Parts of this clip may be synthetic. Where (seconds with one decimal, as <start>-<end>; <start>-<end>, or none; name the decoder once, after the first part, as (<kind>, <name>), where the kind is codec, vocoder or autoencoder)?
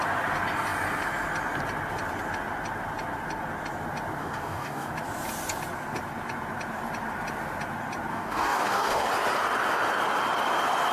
4.2-4.9 (codec, DAC); 8.1-9.1